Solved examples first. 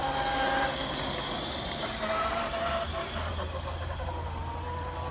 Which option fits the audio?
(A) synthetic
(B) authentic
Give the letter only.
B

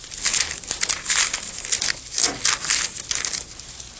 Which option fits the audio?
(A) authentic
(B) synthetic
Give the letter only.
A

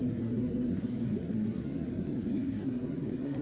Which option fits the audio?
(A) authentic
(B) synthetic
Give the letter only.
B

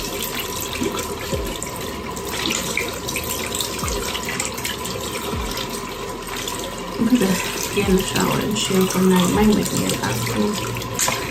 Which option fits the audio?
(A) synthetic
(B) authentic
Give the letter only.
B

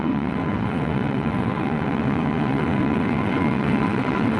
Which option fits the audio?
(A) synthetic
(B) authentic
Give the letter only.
A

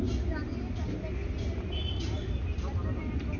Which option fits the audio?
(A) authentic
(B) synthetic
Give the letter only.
A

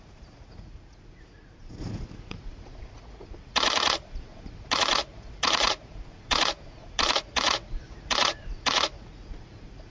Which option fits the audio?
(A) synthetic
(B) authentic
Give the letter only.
A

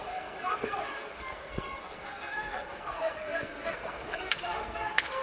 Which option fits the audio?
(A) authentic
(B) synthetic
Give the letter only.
B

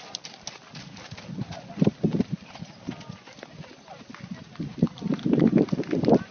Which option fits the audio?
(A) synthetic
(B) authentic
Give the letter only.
B